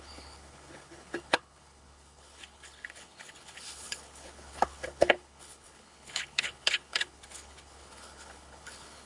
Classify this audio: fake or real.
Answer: fake